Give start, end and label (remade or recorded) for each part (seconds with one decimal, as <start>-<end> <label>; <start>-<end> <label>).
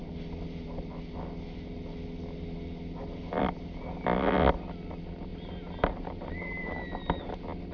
0.0-5.3 recorded; 5.3-7.0 remade; 7.0-7.7 recorded